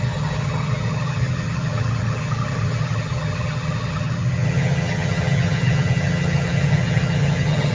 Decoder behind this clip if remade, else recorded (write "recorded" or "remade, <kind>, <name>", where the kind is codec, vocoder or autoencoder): remade, vocoder, HiFi-GAN